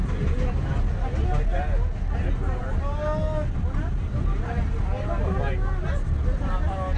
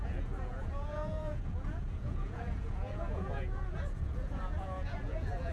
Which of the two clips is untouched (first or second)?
first